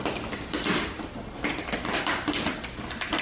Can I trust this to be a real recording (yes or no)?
yes